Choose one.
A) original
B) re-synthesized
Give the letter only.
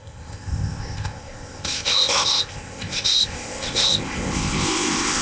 B